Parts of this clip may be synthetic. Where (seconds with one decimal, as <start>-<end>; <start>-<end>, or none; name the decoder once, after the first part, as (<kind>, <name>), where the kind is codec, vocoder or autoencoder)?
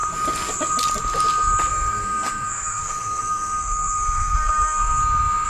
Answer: 1.7-5.0 (codec, SNAC)